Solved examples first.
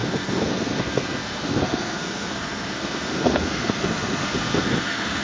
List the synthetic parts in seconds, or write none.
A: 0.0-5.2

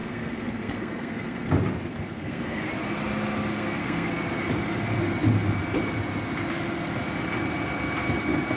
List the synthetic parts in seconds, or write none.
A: 0.0-1.5; 1.9-2.7; 3.5-4.1

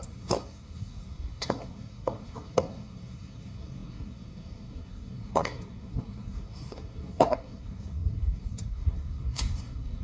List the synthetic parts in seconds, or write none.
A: 0.0-10.0

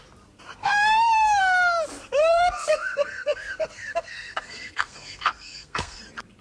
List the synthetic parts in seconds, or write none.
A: 0.6-1.4; 2.2-6.0

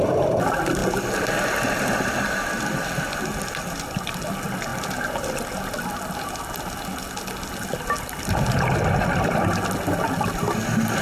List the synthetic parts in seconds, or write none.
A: none

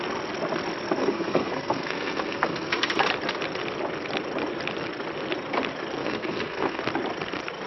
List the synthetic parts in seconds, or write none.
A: 1.0-3.0; 6.0-6.8

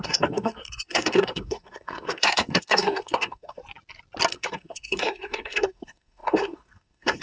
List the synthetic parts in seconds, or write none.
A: 0.0-3.6; 4.3-7.2

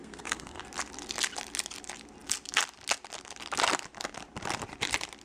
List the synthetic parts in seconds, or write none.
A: 0.0-0.6